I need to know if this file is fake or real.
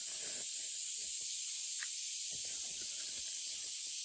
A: real